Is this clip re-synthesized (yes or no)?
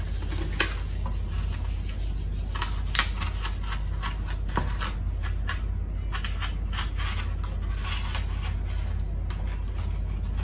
no